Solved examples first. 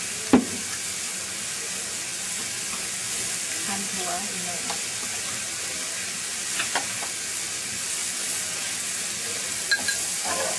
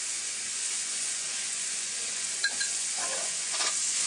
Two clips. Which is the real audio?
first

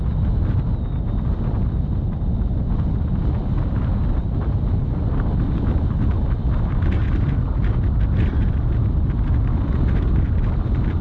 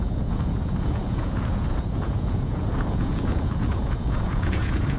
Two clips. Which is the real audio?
first